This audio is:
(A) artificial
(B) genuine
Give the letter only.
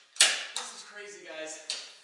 B